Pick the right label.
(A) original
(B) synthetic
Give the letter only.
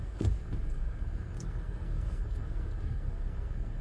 B